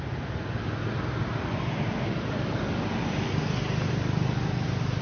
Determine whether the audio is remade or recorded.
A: recorded